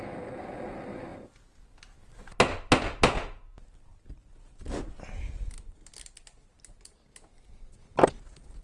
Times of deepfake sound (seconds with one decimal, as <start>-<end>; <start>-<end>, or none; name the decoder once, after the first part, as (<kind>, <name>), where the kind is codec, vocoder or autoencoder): none